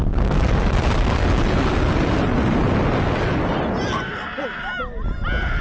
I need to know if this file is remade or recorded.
recorded